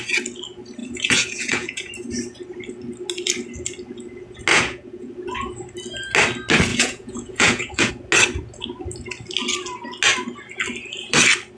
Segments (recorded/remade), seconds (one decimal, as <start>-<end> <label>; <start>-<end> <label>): 0.0-0.8 recorded; 0.8-1.9 remade; 1.9-4.5 recorded; 4.5-5.1 remade; 5.1-6.7 recorded; 6.7-7.9 remade; 7.9-11.6 recorded